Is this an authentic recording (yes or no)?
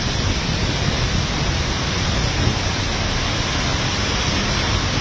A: yes